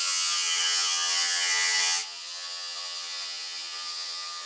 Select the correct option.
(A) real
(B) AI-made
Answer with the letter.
B